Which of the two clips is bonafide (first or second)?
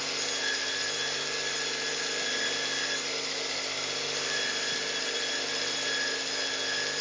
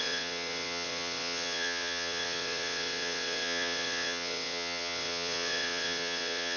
first